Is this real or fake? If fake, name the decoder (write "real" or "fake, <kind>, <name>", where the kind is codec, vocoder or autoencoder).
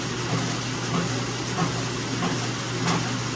real